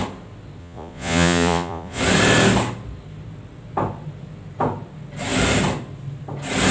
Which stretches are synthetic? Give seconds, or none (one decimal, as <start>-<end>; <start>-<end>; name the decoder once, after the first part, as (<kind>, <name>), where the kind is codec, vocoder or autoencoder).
0.6-2.0 (vocoder, Vocos)